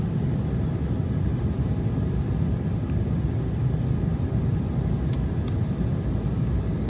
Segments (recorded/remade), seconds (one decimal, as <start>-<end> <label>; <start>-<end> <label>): 0.0-6.9 recorded